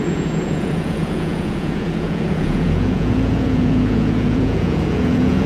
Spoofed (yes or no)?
yes